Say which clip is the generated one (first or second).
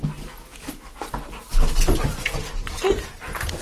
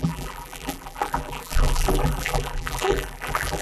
second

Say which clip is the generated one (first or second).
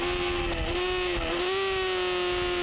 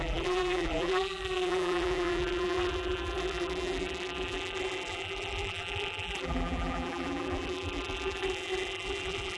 second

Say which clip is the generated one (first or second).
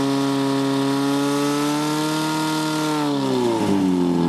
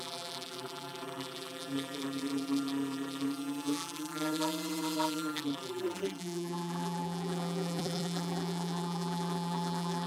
second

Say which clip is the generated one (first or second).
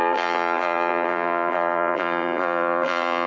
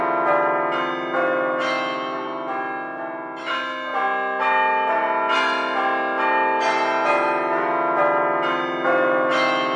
first